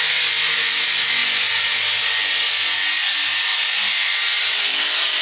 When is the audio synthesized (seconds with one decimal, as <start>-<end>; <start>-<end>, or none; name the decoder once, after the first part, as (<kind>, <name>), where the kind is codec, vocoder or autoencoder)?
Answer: none